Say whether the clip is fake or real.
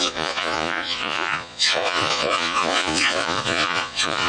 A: fake